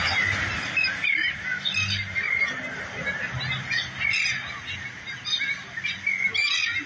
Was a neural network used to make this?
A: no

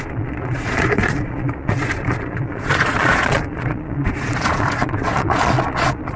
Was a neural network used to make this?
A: yes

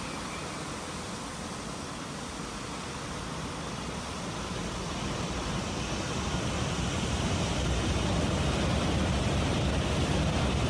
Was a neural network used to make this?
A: no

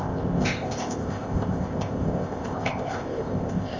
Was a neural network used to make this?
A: yes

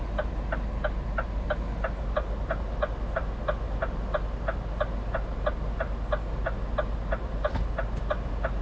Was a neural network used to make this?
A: no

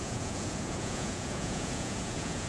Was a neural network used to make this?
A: yes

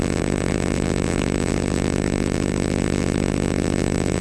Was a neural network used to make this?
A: yes